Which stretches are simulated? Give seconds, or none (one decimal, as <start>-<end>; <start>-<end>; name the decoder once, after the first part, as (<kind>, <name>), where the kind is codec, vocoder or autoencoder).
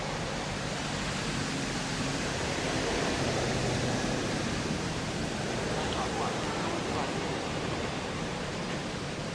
2.1-6.1 (vocoder, BigVGAN v2)